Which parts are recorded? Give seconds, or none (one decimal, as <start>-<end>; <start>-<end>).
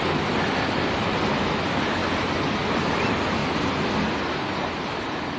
0.0-5.4